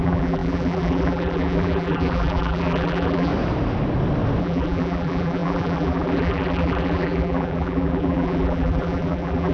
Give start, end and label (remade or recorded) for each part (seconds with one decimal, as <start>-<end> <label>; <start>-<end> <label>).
0.0-3.3 remade; 3.3-4.4 recorded; 4.4-9.5 remade